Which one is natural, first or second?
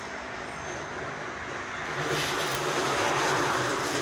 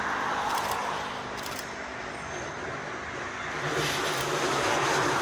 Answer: first